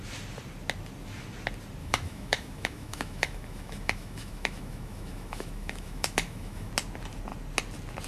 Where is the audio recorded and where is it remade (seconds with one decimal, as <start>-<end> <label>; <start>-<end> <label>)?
0.0-1.8 recorded; 1.8-6.7 remade; 6.7-8.1 recorded

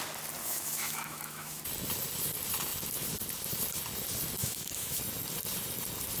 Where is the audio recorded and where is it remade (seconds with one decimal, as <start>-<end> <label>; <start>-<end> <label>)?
0.0-0.4 recorded; 0.4-1.6 remade; 1.6-4.4 recorded; 4.4-5.0 remade; 5.0-6.2 recorded

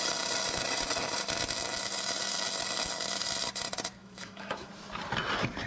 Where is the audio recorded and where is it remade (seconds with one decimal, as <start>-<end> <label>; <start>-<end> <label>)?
0.0-4.0 recorded; 4.0-4.7 remade; 4.7-5.7 recorded